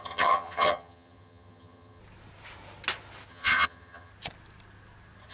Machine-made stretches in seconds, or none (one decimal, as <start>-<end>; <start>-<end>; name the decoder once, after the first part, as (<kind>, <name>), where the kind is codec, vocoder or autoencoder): 0.0-2.0 (vocoder, HiFi-GAN); 3.3-4.1